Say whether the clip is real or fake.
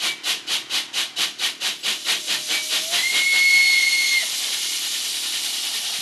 real